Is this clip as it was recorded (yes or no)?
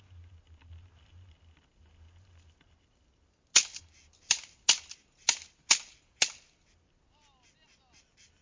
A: yes